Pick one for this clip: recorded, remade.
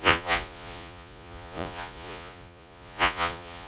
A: remade